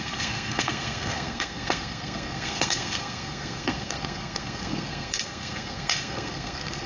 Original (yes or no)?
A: no